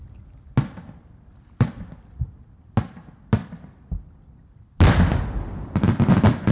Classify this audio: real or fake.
real